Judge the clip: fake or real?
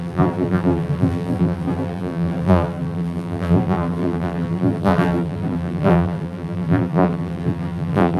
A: fake